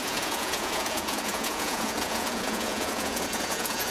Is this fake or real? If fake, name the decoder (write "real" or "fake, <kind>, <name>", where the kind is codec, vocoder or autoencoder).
fake, vocoder, Vocos